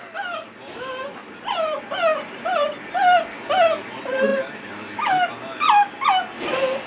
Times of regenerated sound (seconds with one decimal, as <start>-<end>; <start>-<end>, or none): none